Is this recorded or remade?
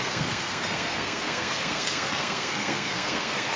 remade